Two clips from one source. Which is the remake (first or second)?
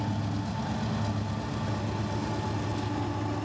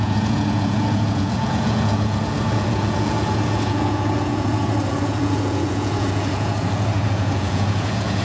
second